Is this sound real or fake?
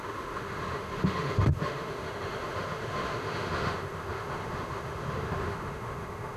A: fake